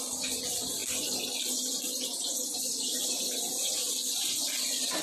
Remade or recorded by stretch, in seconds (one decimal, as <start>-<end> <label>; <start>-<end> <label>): 0.0-5.0 recorded